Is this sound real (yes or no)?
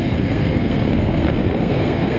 no